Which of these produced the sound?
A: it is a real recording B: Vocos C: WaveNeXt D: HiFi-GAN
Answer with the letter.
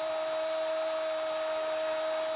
A